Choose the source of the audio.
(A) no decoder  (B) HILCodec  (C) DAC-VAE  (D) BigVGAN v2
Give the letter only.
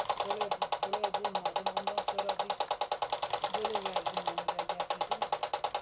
A